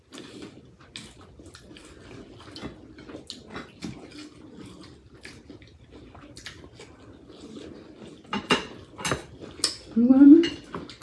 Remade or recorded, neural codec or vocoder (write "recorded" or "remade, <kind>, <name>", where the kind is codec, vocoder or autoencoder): recorded